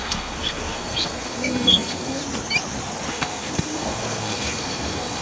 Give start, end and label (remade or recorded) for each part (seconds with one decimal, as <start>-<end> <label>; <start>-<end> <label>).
0.0-2.2 remade; 2.2-3.1 recorded; 3.1-5.2 remade